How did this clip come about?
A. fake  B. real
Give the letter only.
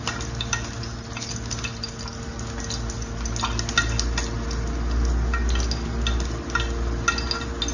B